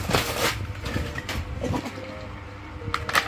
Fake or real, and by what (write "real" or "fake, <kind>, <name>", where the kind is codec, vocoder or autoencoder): real